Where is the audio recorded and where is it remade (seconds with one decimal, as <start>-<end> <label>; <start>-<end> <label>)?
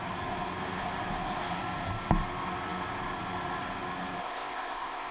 0.0-4.2 recorded; 4.2-5.1 remade